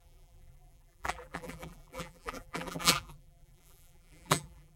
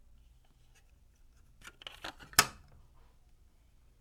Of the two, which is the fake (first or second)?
first